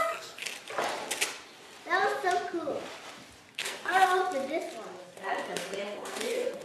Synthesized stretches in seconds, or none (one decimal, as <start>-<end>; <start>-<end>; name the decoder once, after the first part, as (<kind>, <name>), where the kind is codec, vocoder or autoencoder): 0.0-0.5 (codec, SNAC); 3.5-4.2; 5.0-6.6